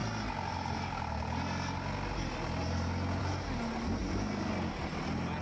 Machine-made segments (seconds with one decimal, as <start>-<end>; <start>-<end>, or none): none